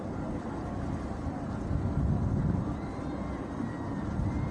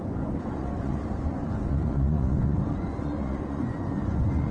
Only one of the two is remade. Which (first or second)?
second